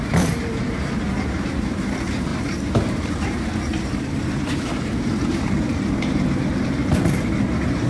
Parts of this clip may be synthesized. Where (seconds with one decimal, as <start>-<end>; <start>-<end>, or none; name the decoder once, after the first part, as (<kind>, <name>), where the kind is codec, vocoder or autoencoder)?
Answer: 0.0-7.9 (vocoder, BigVGAN v2)